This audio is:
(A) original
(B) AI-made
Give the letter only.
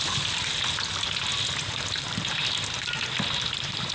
A